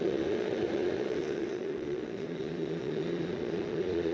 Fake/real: fake